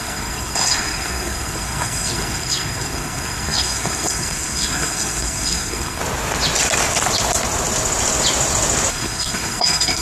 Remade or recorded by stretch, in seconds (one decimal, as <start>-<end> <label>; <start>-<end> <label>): 0.0-6.0 remade; 6.0-8.9 recorded; 8.9-10.0 remade